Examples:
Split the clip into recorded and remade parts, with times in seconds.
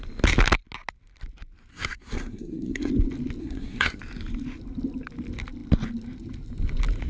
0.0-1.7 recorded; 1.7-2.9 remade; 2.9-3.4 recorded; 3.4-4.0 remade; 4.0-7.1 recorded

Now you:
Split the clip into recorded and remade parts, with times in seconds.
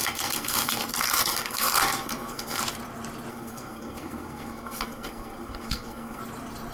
0.0-2.6 remade; 2.6-3.3 recorded; 3.3-6.2 remade; 6.2-6.7 recorded